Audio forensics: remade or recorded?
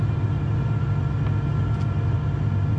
recorded